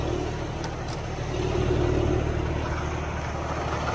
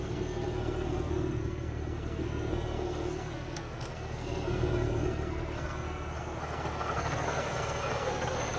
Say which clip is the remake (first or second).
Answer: second